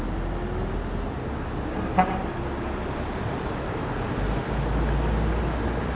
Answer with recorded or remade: recorded